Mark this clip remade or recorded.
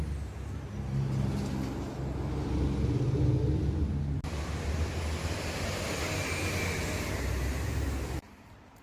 recorded